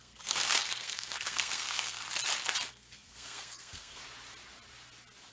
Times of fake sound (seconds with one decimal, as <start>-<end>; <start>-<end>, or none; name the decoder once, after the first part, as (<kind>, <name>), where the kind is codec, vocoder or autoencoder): 0.0-2.0 (codec, SNAC); 2.7-4.0